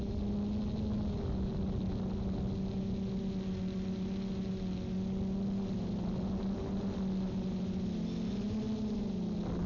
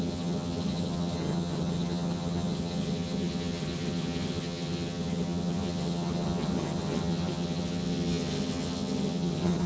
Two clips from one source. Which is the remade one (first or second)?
second